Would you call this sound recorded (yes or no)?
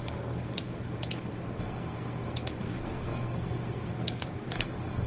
no